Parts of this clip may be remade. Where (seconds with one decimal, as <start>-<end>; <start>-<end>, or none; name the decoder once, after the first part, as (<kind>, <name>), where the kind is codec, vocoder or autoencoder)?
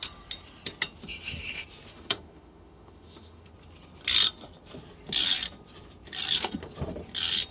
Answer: 1.9-3.5 (autoencoder, DAC-VAE)